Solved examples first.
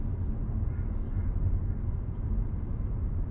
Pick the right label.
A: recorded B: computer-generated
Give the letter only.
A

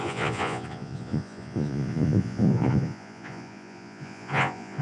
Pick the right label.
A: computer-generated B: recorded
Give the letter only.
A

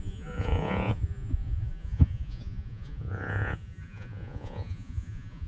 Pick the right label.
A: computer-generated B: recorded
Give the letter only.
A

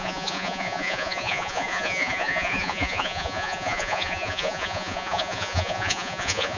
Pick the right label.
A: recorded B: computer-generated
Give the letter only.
B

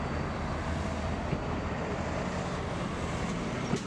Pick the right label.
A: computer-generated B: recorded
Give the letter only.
B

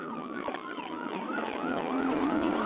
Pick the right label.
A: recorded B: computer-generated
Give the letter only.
B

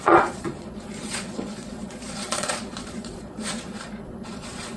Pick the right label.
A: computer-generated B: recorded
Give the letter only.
A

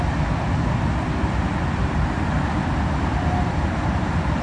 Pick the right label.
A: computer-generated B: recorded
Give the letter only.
B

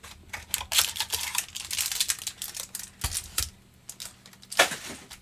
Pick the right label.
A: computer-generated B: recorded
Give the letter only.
B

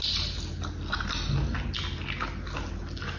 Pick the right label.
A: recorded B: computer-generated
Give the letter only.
A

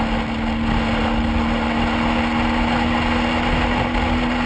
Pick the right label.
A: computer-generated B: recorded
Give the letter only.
B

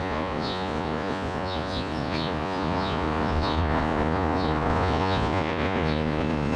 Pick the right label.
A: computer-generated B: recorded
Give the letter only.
A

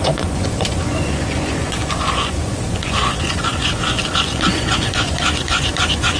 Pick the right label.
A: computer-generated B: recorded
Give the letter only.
A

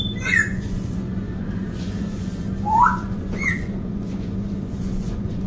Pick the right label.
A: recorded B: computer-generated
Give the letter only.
B